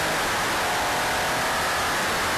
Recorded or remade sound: recorded